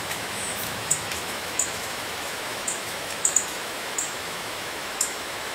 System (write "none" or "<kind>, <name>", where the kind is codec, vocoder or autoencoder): autoencoder, DAC-VAE